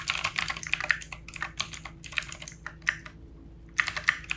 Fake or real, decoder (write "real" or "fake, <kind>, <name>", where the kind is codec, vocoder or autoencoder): real